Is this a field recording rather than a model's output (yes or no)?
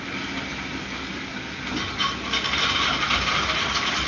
yes